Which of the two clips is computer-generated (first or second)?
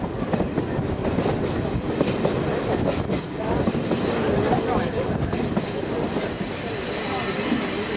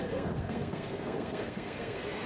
second